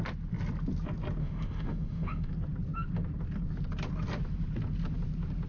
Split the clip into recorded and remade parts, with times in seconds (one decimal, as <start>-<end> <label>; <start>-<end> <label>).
0.0-1.2 recorded; 1.2-2.3 remade; 2.3-5.5 recorded